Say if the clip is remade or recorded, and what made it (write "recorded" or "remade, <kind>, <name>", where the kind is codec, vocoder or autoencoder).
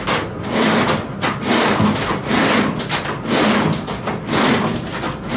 recorded